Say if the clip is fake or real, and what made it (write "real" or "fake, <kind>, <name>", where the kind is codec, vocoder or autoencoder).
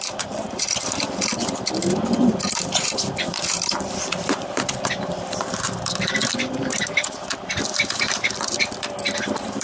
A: fake, vocoder, BigVGAN v2